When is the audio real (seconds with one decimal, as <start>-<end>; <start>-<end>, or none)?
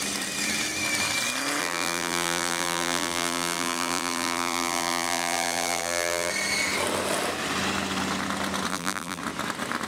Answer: 0.0-1.6; 6.3-8.7; 9.2-9.9